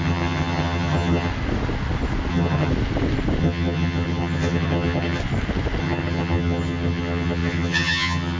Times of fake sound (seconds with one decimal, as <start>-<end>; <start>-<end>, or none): 0.0-1.3; 2.3-2.7; 3.4-5.2; 5.8-8.4